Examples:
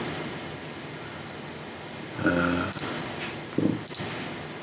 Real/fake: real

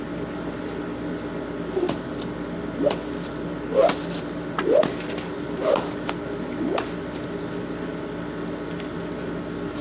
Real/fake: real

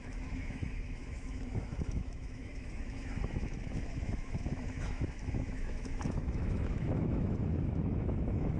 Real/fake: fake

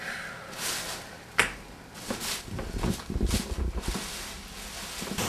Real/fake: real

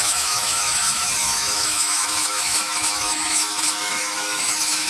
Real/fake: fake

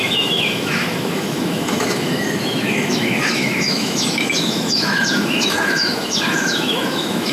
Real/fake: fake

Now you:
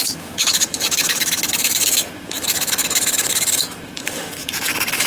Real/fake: fake